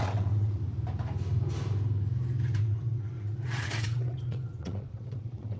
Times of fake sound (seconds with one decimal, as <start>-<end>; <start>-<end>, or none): 0.0-0.6; 2.6-5.6